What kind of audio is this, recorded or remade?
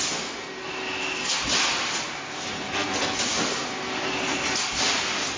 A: recorded